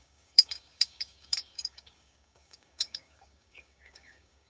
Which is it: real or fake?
fake